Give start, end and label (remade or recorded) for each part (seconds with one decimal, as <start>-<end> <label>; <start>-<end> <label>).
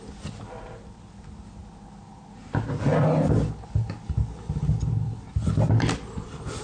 0.0-6.6 recorded